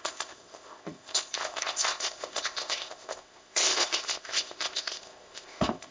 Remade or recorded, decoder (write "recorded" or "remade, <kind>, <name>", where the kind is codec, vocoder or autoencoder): remade, codec, ZipCodec